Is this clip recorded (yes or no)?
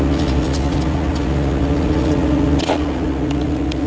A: no